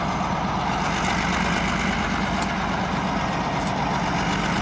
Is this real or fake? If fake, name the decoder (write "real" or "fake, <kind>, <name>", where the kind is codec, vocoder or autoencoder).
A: real